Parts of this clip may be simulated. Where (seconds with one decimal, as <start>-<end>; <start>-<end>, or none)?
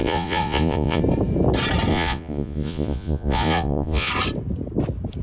0.0-1.0; 1.9-4.1